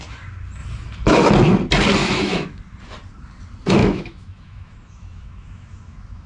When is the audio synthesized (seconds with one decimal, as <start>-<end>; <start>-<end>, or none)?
2.0-2.6; 3.8-6.3